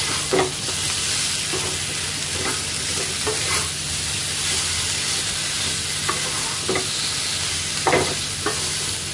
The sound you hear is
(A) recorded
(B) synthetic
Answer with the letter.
A